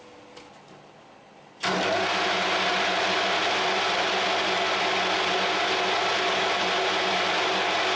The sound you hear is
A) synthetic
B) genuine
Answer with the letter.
B